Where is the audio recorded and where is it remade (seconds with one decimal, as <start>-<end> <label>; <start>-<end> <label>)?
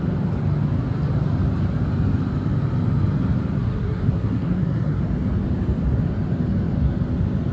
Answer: 0.0-3.6 recorded; 3.6-5.0 remade; 5.0-7.5 recorded